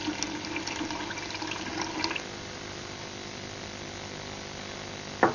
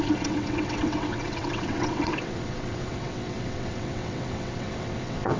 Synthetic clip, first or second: second